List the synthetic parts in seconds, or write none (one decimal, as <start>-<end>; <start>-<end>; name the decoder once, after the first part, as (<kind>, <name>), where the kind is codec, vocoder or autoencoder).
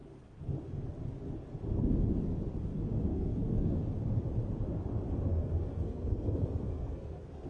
3.1-3.7 (codec, SNAC); 5.3-7.5